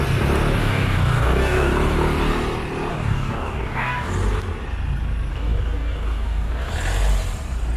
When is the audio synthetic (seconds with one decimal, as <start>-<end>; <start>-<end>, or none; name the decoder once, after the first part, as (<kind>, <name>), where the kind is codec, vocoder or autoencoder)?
0.6-1.7 (codec, DAC); 2.9-4.1; 5.3-6.7